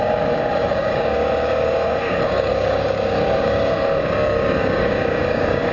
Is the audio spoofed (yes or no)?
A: yes